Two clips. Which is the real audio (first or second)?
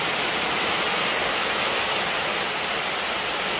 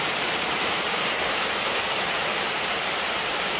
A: first